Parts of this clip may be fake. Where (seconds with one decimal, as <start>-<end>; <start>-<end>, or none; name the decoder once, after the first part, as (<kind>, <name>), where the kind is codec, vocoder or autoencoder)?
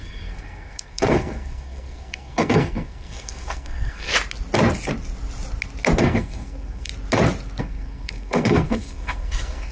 0.0-4.1 (codec, SNAC); 6.0-6.9; 7.6-9.7